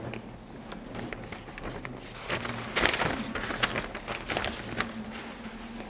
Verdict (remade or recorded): recorded